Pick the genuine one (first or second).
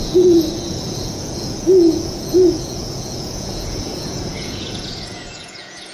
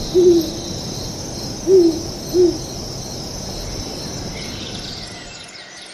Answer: second